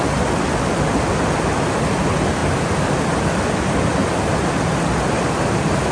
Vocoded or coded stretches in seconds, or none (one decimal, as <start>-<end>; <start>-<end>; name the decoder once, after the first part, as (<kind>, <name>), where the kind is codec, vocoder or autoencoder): none